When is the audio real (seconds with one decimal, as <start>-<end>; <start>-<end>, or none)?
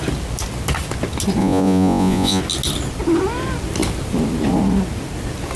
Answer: 0.0-1.4; 2.4-5.6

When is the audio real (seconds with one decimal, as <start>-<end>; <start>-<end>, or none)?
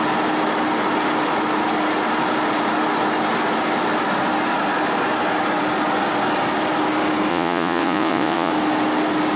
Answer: 0.0-7.3; 8.5-9.4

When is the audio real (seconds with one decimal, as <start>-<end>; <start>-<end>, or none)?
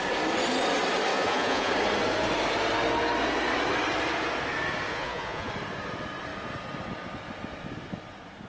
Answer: 0.0-1.1; 1.7-4.9; 5.5-8.5